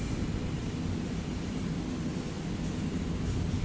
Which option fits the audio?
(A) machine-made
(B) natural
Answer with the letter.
B